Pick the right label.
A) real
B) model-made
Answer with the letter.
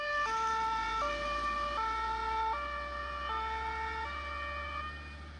A